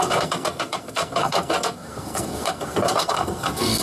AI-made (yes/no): yes